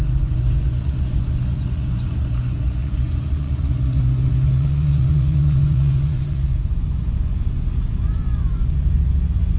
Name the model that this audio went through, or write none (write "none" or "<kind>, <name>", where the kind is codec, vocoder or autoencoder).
vocoder, Vocos